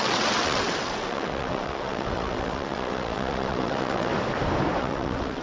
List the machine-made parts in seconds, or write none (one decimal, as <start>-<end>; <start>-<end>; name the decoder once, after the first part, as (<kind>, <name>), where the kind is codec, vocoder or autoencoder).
0.0-4.1 (vocoder, WaveNeXt); 4.8-5.4